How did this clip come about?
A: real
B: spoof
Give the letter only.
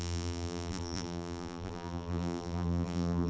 B